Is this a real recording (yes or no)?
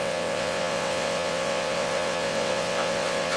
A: no